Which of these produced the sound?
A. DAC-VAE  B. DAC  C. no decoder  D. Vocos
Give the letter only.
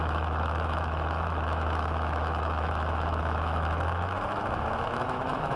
A